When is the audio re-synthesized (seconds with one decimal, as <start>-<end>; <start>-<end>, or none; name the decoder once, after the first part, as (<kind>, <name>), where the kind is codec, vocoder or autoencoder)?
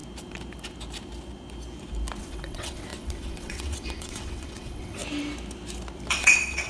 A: 2.2-5.0 (vocoder, WaveNeXt); 6.1-6.7